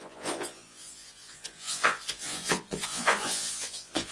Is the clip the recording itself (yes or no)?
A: no